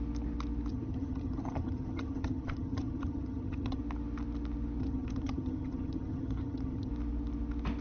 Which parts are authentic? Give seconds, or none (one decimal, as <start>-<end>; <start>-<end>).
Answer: 0.0-0.7; 3.8-4.8; 6.9-7.8